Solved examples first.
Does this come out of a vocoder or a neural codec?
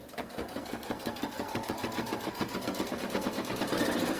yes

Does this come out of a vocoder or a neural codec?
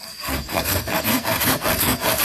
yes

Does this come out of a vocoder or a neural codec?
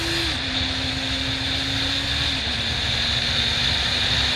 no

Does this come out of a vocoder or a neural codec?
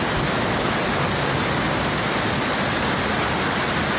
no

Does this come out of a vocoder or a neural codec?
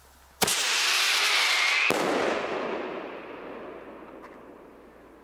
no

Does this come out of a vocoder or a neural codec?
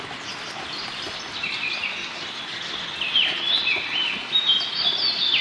no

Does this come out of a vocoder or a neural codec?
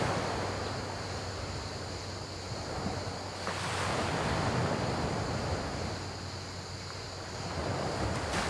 no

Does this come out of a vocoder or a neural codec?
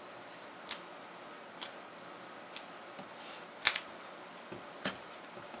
no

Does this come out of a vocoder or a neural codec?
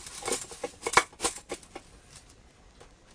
no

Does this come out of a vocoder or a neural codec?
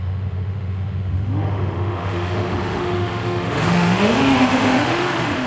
yes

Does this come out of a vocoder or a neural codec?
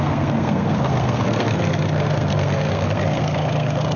yes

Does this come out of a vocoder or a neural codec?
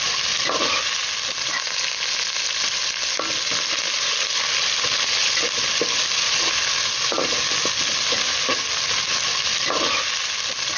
no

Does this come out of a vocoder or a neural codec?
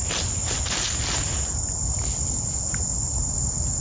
no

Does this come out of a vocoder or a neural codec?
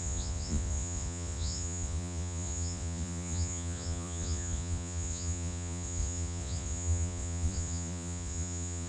yes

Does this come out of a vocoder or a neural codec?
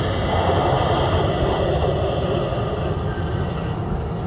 no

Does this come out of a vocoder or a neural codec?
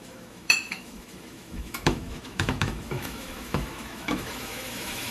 yes